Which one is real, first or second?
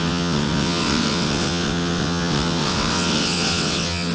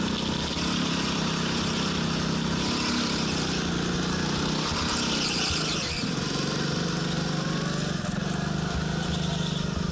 second